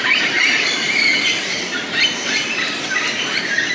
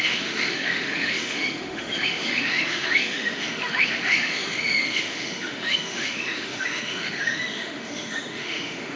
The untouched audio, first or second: first